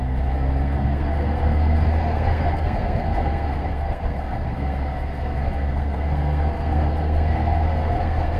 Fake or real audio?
fake